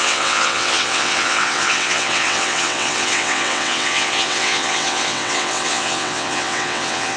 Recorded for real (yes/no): no